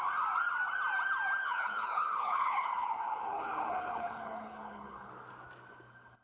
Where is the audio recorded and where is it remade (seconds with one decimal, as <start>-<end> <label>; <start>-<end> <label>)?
0.0-1.4 recorded; 1.4-5.1 remade; 5.1-6.2 recorded